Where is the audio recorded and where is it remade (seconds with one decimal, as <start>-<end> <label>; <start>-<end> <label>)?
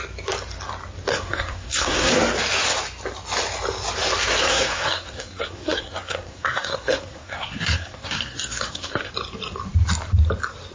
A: 0.0-1.1 recorded; 1.1-2.1 remade; 2.1-4.4 recorded; 4.4-9.1 remade; 9.1-10.7 recorded